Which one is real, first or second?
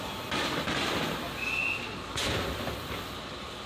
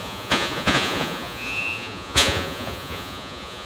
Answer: first